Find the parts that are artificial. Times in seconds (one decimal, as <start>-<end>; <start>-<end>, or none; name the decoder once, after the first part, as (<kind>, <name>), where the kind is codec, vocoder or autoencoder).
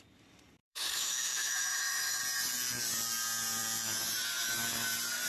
0.6-2.2 (autoencoder, DAC-VAE)